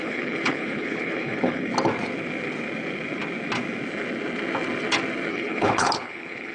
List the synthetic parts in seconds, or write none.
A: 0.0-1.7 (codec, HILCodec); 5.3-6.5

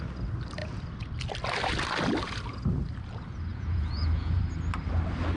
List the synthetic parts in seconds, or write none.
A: 3.5-4.4 (vocoder, Vocos)

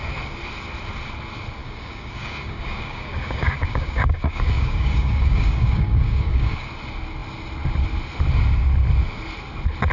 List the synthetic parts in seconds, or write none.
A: 1.6-6.7 (codec, DAC)

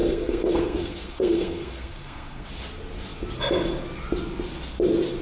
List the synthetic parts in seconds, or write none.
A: 0.0-2.5 (codec, SNAC)